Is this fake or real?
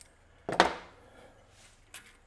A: real